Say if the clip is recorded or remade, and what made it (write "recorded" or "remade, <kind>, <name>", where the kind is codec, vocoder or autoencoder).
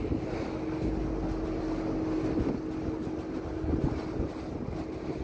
recorded